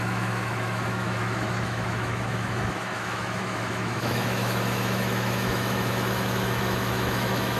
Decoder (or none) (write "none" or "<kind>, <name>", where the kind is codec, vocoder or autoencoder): autoencoder, DAC-VAE